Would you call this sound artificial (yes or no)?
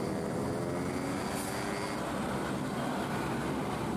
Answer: no